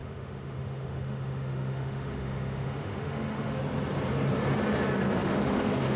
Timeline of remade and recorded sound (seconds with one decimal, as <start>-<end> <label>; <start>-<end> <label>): 0.0-3.6 remade; 3.6-5.2 recorded; 5.2-6.0 remade